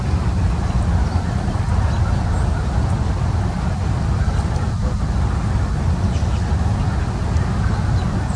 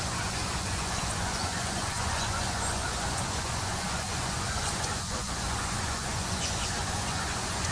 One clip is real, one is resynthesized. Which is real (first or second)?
first